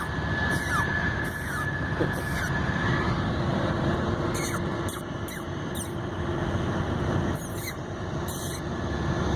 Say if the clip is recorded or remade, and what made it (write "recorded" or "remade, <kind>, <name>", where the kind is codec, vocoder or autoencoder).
recorded